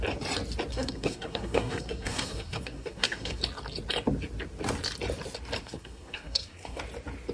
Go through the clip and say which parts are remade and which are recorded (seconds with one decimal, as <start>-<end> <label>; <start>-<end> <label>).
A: 0.0-0.7 recorded; 0.7-3.4 remade; 3.4-5.6 recorded; 5.6-6.8 remade; 6.8-7.3 recorded